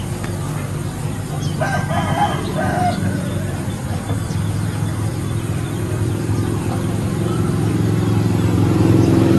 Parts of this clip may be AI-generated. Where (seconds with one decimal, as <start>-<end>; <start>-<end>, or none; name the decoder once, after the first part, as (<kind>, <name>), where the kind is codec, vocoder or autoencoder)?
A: 1.9-4.4 (vocoder, BigVGAN v2); 5.1-7.7